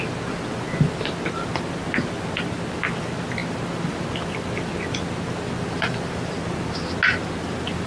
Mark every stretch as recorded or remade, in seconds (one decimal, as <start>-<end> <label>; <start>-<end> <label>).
0.0-7.9 recorded